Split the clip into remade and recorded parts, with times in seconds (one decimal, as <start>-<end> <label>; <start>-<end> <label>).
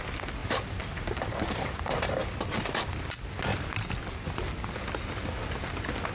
0.0-0.4 recorded; 0.4-2.6 remade; 2.6-6.1 recorded